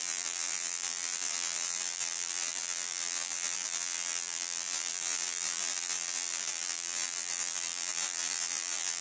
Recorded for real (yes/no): no